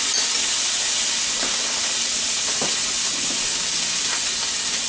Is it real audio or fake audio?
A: real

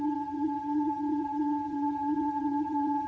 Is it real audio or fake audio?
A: fake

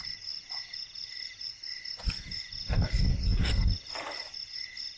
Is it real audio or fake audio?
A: real